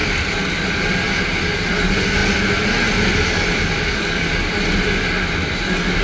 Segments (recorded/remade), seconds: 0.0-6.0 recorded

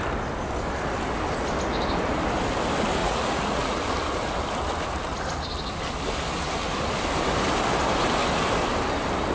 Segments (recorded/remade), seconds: 0.0-3.0 recorded; 3.0-3.8 remade; 3.8-9.3 recorded